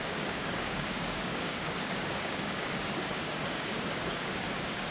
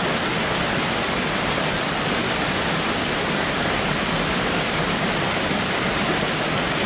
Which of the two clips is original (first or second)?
second